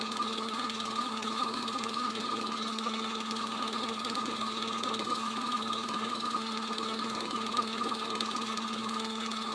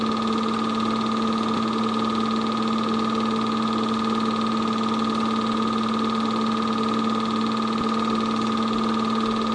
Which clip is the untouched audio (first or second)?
second